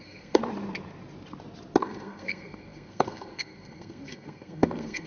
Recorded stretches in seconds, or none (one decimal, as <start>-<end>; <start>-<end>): 0.4-1.8